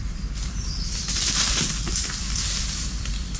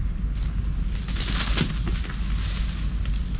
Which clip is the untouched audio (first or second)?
second